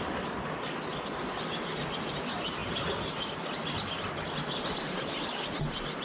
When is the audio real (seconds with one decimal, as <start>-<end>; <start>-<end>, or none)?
0.0-6.0